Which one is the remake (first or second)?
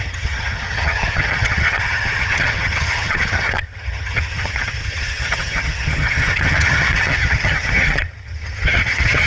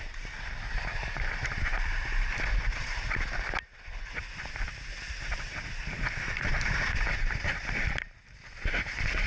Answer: first